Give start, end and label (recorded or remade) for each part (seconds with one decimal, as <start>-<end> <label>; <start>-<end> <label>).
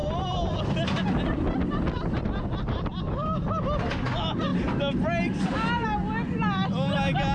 0.0-7.3 recorded